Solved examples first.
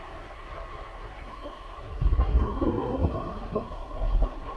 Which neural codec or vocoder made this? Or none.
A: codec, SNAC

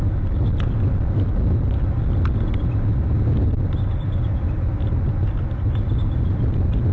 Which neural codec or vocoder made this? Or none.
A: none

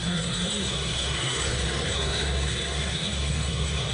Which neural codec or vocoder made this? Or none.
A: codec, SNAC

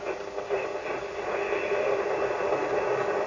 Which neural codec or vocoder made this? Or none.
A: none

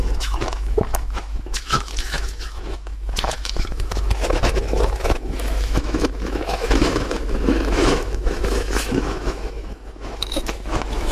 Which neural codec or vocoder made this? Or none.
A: autoencoder, DAC-VAE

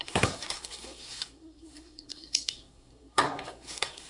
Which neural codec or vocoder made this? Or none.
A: codec, SNAC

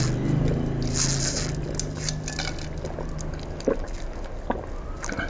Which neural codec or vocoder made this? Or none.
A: none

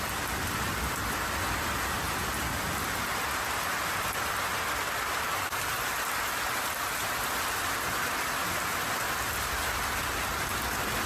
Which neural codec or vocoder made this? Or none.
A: none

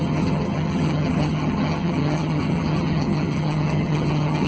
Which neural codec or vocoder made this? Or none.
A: vocoder, HiFi-GAN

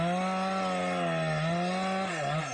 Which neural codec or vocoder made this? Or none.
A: none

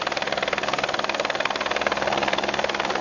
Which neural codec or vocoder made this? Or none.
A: none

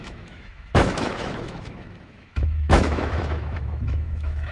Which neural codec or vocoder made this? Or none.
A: autoencoder, DAC-VAE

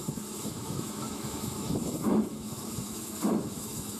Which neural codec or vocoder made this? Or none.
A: autoencoder, DAC-VAE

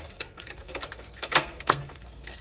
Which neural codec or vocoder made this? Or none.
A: codec, SNAC